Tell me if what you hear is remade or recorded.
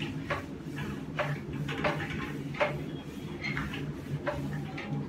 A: recorded